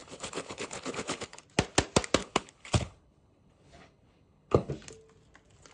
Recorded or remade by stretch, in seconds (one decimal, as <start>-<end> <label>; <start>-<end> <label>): 0.0-1.4 remade; 1.4-2.2 recorded; 2.2-4.7 remade; 4.7-5.7 recorded

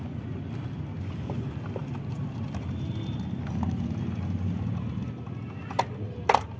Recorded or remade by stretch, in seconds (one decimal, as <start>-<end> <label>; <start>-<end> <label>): 0.0-6.6 recorded